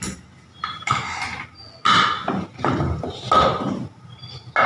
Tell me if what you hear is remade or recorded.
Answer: recorded